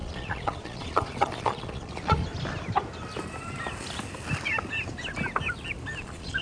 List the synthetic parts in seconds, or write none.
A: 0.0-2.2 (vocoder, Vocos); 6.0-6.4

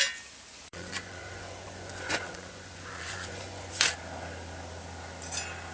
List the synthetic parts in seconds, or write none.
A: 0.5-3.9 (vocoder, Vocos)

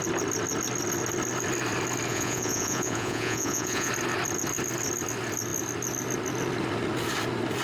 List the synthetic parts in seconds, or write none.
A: 2.1-3.9 (vocoder, Vocos)